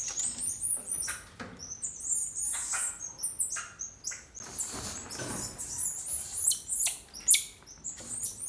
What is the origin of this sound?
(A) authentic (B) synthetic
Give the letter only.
A